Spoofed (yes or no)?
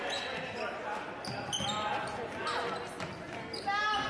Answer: no